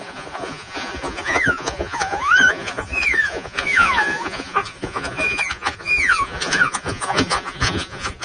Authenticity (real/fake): fake